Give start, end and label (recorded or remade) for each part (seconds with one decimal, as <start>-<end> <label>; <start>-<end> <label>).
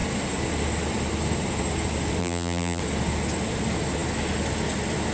0.0-2.2 recorded; 2.2-2.8 remade; 2.8-5.1 recorded